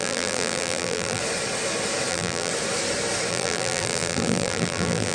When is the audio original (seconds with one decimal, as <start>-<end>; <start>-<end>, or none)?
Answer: 1.2-2.1; 2.5-3.3